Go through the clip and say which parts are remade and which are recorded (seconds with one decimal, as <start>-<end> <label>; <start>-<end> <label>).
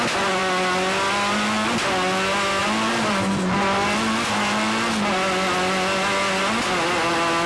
0.0-7.5 recorded